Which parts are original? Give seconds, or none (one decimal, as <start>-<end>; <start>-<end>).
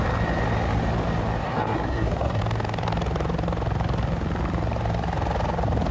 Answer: 0.0-1.4; 2.4-5.9